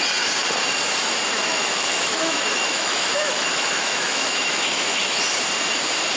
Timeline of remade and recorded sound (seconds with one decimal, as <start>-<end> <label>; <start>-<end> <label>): 0.0-1.5 recorded; 1.5-5.2 remade; 5.2-6.2 recorded